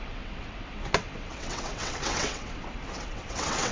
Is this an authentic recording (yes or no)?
no